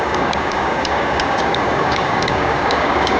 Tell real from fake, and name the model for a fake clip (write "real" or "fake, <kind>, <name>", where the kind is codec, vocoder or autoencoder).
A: fake, codec, DAC